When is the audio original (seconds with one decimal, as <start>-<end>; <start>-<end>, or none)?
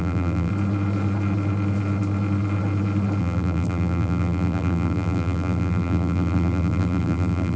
0.5-3.2